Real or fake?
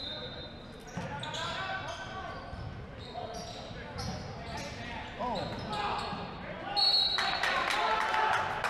real